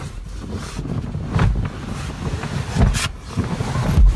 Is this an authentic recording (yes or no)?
yes